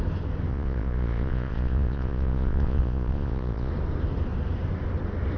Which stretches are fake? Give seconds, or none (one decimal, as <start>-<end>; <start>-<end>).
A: 0.5-3.7